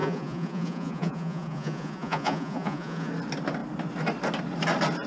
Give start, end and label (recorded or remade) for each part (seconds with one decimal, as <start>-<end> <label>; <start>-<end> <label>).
0.0-3.1 remade; 3.1-5.1 recorded